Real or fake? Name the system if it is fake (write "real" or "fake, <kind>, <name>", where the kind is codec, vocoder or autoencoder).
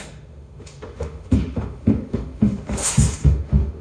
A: fake, autoencoder, DAC-VAE